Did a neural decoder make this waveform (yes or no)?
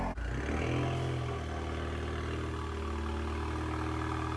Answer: no